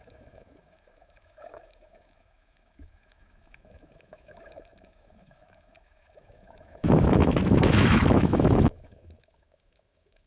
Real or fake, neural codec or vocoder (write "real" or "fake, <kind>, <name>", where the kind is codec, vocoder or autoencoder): fake, autoencoder, DAC-VAE